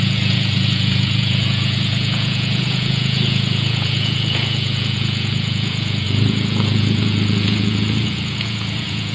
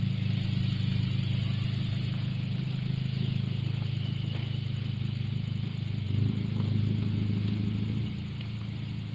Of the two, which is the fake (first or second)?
first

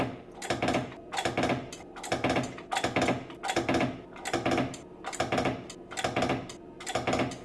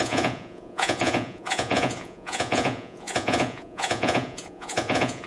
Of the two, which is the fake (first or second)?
second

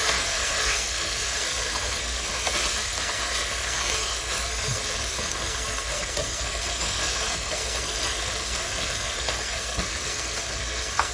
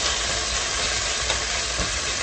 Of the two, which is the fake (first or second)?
first